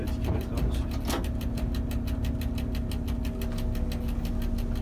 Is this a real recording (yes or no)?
yes